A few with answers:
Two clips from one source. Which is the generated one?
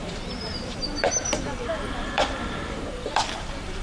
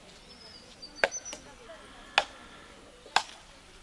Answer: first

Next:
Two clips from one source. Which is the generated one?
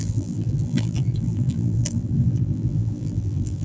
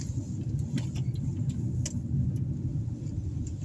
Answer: first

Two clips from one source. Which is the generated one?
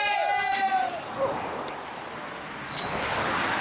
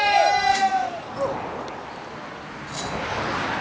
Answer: first